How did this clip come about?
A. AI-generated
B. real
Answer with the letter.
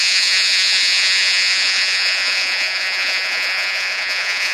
A